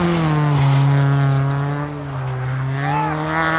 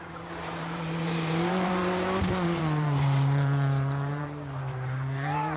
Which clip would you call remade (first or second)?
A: second